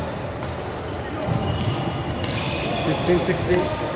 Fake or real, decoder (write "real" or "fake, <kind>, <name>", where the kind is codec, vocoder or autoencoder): real